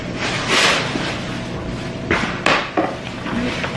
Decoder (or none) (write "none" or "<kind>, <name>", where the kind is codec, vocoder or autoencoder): none